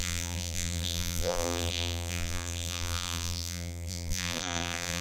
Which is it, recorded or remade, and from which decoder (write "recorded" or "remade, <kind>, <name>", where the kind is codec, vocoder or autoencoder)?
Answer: remade, vocoder, BigVGAN v2